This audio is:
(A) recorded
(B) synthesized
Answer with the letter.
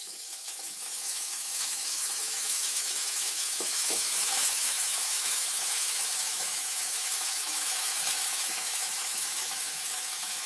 B